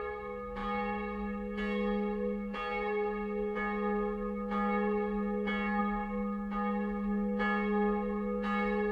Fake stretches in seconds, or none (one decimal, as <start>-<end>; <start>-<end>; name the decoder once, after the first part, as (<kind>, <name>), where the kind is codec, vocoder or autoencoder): none